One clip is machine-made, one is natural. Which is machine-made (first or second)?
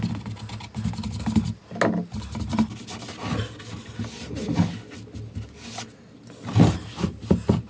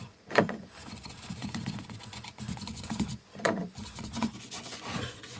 second